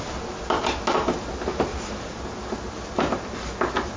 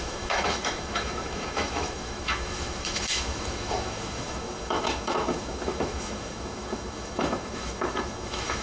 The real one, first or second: first